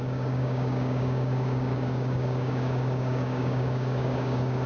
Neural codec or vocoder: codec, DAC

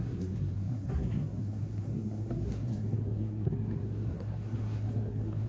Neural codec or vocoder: codec, SNAC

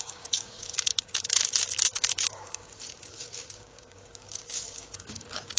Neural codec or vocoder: codec, DAC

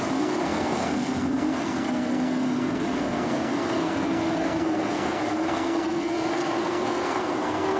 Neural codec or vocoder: codec, SNAC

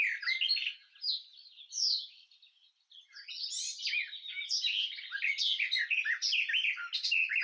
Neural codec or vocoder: none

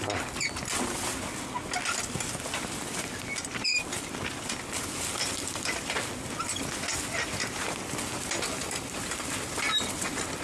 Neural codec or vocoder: none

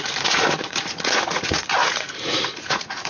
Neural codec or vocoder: vocoder, Vocos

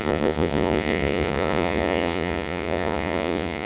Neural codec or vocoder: vocoder, Vocos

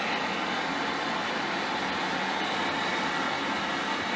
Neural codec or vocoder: none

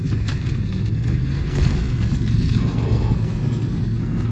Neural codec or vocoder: codec, SNAC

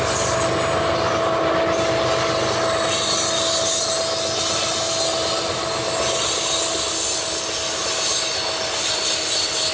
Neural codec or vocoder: none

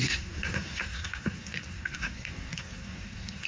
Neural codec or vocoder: codec, SNAC